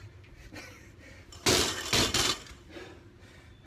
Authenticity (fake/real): real